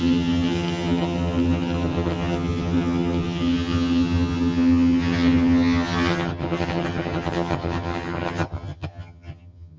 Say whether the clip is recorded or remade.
remade